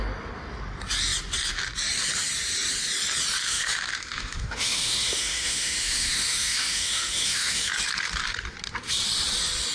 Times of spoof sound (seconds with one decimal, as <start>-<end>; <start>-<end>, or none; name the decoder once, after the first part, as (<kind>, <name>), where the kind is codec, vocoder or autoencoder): 3.4-7.7 (autoencoder, DAC-VAE)

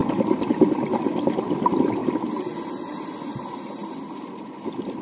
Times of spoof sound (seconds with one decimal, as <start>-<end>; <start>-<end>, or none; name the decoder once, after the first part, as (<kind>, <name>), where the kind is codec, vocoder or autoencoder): none

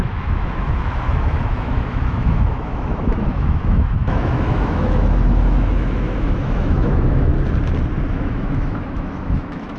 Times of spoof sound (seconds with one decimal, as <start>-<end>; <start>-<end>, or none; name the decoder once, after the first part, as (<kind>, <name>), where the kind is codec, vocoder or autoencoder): 0.0-7.3 (autoencoder, DAC-VAE); 8.1-9.8

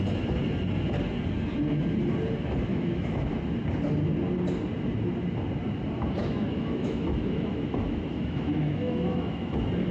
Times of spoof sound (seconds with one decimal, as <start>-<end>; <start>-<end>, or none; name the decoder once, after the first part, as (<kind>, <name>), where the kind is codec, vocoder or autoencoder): 2.7-3.3 (autoencoder, DAC-VAE); 6.2-9.5